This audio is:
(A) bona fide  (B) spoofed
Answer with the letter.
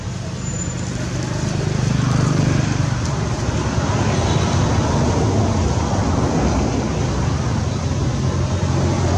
A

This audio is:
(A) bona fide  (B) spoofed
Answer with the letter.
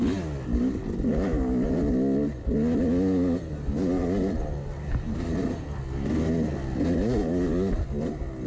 A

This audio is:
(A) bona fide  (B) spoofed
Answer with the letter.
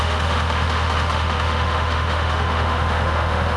B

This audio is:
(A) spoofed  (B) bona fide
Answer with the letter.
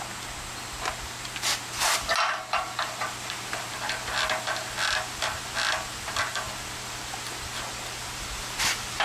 B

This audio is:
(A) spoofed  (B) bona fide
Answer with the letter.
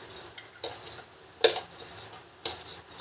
B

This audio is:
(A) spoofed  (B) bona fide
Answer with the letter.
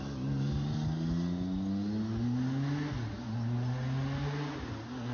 B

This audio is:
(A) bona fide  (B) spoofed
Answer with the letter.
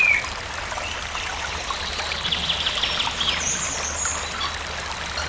A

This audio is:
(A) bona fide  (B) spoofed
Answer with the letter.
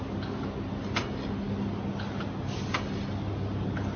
A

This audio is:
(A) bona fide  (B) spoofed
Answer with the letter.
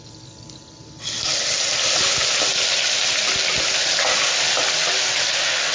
A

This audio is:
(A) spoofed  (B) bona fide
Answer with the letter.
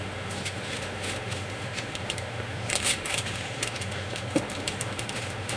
A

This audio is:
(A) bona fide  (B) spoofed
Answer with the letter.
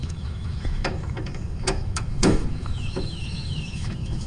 B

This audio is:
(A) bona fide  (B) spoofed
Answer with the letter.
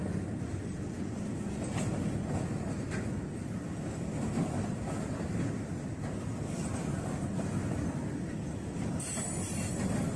A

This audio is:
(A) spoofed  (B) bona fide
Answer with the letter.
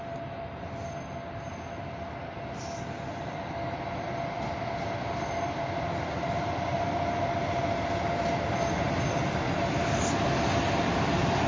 B